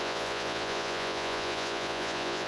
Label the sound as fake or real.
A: fake